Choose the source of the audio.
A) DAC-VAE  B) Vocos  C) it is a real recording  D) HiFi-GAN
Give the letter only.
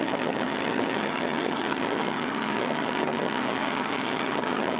D